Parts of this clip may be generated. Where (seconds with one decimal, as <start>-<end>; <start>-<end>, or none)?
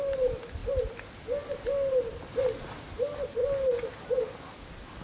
none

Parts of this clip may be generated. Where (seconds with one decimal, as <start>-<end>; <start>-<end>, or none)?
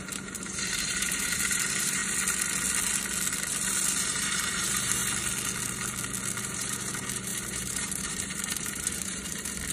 0.0-2.0; 4.1-5.0; 6.4-9.7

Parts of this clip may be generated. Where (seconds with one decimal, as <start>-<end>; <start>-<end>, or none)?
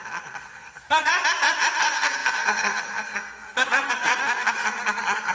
0.0-1.1; 1.8-5.3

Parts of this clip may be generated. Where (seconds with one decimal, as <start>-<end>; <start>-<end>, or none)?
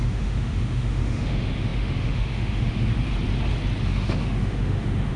0.0-2.9; 3.9-5.2